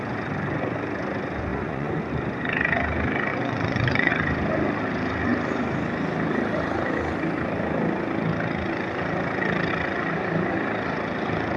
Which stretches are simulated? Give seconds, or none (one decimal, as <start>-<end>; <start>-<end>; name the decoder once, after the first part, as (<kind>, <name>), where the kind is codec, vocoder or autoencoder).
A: 1.5-2.0 (vocoder, Vocos); 3.3-4.1